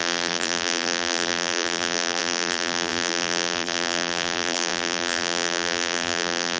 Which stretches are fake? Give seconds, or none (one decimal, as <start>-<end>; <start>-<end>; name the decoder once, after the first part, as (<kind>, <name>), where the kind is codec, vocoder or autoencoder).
0.0-6.6 (vocoder, BigVGAN v2)